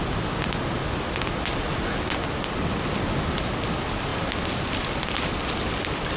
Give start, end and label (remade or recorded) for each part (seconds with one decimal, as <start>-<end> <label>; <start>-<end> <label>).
0.0-6.2 recorded